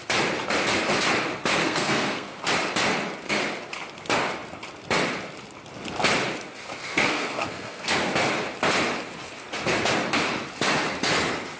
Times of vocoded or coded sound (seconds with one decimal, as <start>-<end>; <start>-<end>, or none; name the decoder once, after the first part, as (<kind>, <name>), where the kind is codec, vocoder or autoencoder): 1.6-2.4 (codec, SNAC); 6.8-8.1